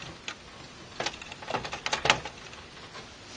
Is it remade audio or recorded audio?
recorded